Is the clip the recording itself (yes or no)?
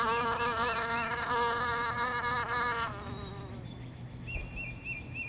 yes